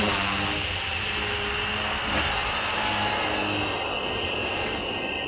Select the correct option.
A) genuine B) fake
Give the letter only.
A